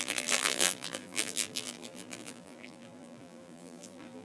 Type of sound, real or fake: fake